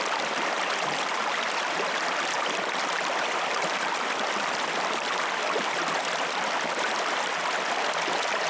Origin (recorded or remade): remade